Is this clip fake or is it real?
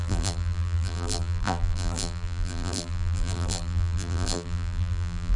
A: fake